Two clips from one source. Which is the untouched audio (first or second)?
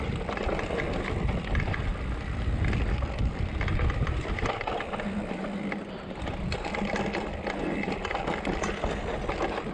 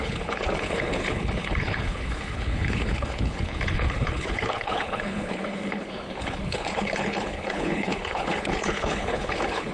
first